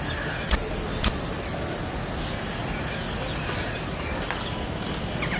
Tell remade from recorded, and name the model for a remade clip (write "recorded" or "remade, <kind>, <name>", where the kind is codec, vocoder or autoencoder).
recorded